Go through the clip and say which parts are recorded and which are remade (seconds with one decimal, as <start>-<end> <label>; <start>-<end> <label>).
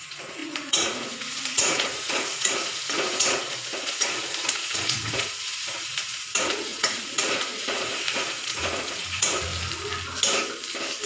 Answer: 0.0-9.5 remade; 9.5-11.1 recorded